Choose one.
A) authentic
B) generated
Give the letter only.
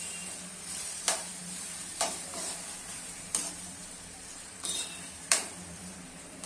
B